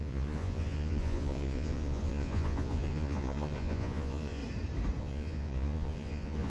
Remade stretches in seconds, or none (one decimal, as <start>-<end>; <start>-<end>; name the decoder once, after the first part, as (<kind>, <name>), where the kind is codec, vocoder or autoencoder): 0.0-4.4 (vocoder, Vocos); 5.0-6.5